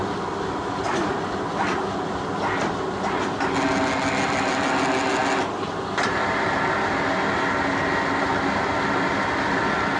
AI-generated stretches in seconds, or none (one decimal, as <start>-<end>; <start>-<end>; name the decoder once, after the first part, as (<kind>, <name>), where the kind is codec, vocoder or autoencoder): none